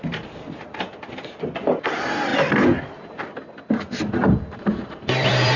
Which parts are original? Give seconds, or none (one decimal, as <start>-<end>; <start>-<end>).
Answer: 0.0-5.6